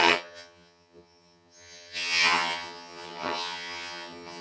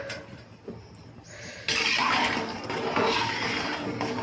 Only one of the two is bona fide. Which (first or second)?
second